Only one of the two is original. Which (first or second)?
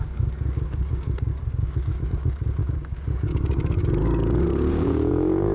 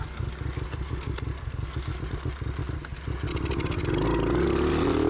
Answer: second